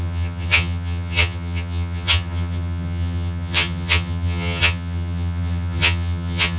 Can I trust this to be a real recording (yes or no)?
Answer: no